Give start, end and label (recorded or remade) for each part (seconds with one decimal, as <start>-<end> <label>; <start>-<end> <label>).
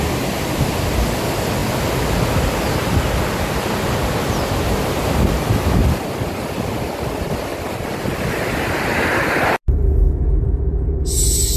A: 0.0-11.6 recorded